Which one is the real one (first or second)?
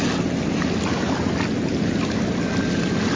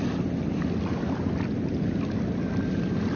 first